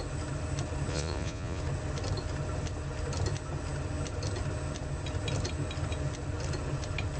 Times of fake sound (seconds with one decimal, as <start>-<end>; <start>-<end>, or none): 0.9-1.6